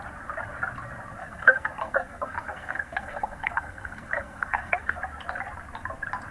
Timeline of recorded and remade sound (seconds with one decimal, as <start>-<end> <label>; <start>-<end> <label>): 0.0-1.2 recorded; 1.2-5.0 remade; 5.0-6.3 recorded